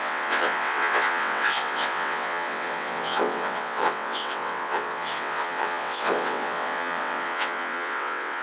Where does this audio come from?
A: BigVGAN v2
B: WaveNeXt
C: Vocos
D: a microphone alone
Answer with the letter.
B